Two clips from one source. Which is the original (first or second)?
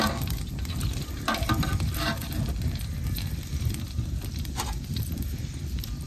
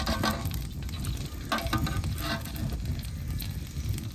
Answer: second